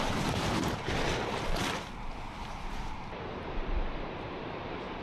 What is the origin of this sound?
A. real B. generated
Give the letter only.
B